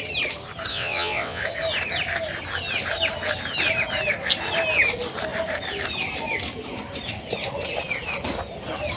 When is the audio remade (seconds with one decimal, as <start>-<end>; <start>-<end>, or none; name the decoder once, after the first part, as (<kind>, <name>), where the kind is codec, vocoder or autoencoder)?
0.7-1.4 (vocoder, WaveNeXt)